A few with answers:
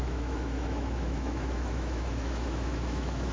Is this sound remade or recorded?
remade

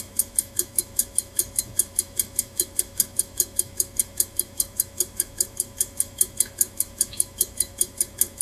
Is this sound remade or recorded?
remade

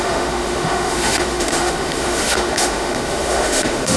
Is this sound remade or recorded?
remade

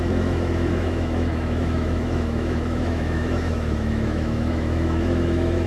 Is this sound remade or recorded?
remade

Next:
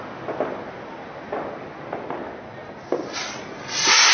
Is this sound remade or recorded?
recorded